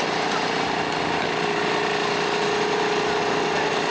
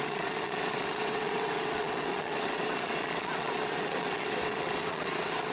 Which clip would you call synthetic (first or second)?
second